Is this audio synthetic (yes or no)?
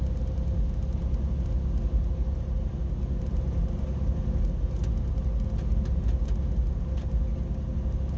no